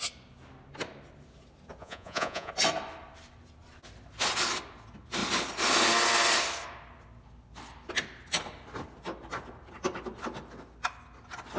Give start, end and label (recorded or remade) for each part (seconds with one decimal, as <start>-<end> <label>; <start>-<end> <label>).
0.0-1.8 recorded; 1.8-2.5 remade; 2.5-11.6 recorded